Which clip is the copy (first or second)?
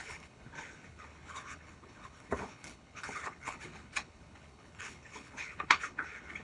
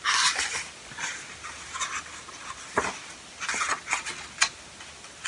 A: first